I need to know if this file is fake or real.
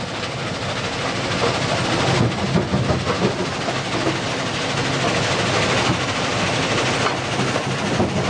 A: real